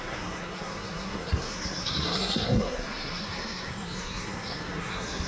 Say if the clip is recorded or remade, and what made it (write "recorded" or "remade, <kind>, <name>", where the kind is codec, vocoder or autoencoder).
remade, codec, SNAC